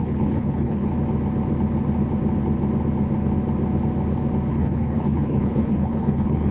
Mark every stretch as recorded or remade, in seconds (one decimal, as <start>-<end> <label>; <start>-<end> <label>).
0.0-0.9 remade; 0.9-4.5 recorded; 4.5-6.5 remade